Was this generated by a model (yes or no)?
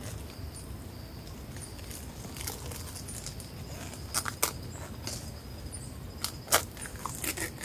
no